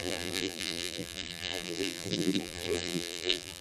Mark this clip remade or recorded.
remade